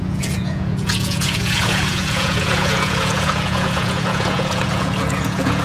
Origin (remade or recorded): remade